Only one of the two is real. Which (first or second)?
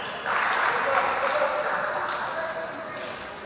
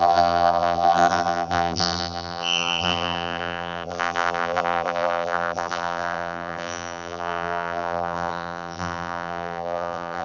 first